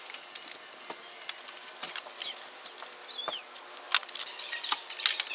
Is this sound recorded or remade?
recorded